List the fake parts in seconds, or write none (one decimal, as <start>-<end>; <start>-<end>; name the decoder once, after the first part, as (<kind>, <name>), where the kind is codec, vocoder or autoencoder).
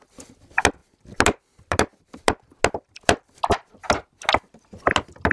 none